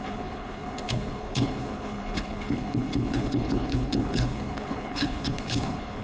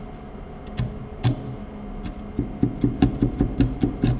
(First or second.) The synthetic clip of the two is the first